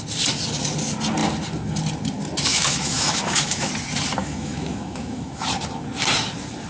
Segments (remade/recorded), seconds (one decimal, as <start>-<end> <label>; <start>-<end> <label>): 0.0-2.5 recorded; 2.5-3.7 remade; 3.7-4.2 recorded; 4.2-5.5 remade; 5.5-6.7 recorded